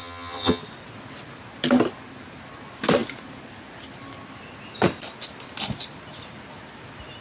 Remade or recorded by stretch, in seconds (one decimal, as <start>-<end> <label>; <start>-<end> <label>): 0.0-0.6 remade; 0.6-7.2 recorded